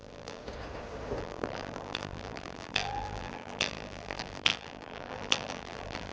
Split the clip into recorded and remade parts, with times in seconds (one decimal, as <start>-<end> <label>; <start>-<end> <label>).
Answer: 0.0-0.4 remade; 0.4-1.2 recorded; 1.2-6.1 remade